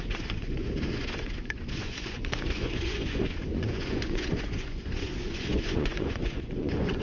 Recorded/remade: remade